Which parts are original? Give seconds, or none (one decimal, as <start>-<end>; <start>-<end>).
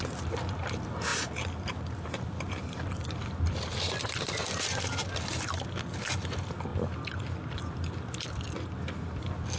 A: 0.0-9.6